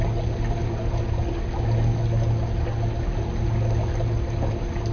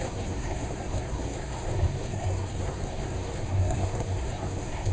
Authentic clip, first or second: first